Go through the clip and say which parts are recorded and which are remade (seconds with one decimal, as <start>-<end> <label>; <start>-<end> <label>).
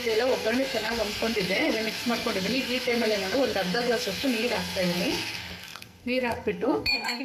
0.0-7.2 remade